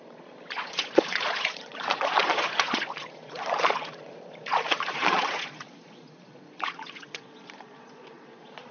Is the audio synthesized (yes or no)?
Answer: yes